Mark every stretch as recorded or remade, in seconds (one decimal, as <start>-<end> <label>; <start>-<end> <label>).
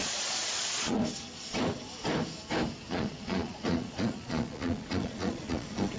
0.0-1.0 remade; 1.0-2.9 recorded; 2.9-6.0 remade